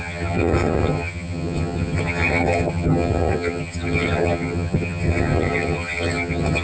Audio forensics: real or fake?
fake